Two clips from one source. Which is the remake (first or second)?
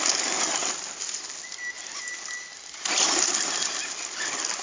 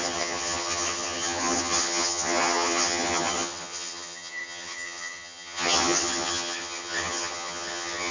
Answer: second